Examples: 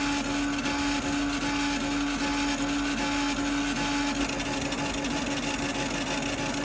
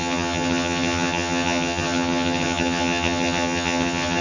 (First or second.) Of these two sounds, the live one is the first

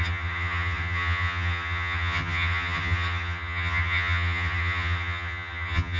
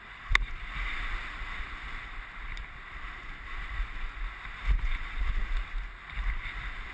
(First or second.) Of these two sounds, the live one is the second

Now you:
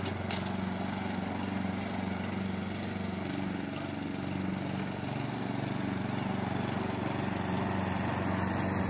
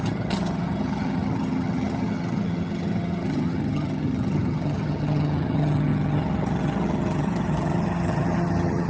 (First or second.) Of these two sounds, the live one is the first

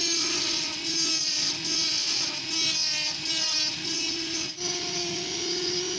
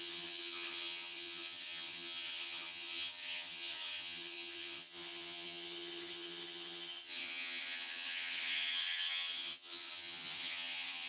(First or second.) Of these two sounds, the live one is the first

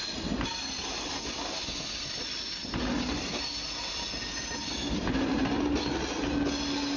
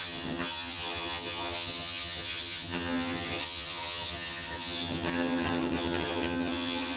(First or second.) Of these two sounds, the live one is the first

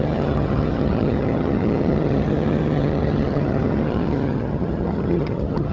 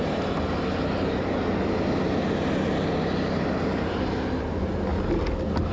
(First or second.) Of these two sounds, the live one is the second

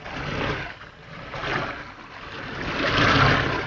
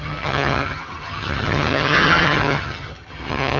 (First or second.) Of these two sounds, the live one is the first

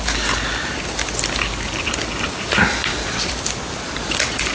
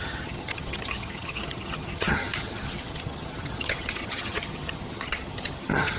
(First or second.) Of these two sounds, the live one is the first